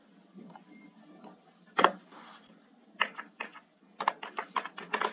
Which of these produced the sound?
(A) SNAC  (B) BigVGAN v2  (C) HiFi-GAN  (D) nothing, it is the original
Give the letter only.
D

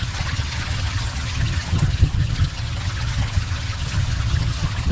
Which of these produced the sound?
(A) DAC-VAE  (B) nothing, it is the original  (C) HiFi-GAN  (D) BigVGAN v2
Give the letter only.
C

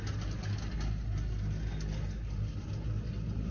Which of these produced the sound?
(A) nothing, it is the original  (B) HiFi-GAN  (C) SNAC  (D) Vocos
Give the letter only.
A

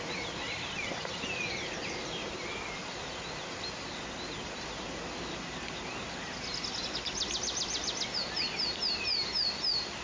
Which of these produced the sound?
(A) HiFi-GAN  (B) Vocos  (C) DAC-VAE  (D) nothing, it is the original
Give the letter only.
D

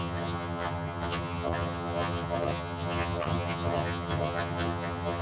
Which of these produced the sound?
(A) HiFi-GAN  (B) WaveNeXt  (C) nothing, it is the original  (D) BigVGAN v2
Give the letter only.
A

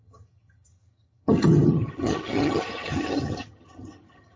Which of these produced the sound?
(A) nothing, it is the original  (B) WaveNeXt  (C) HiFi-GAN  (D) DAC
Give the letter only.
C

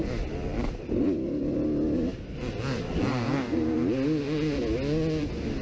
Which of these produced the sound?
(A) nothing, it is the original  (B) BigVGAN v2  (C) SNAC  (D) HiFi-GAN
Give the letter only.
A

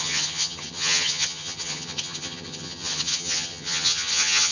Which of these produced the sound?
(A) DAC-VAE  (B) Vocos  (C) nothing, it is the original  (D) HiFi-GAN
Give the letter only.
D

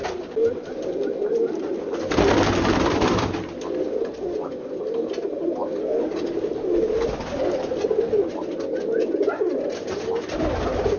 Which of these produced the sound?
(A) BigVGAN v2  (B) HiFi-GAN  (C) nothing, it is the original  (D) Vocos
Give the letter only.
C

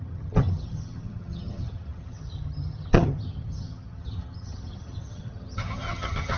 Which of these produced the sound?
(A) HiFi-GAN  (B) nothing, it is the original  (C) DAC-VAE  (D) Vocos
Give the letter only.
A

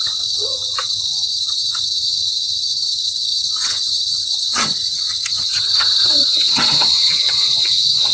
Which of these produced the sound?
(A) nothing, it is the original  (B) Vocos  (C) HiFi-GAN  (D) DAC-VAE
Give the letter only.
C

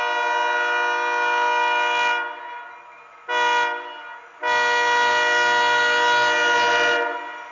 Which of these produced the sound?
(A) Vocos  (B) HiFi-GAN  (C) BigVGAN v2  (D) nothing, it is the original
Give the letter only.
D